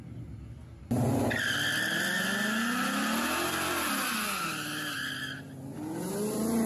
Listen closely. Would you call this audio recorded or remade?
recorded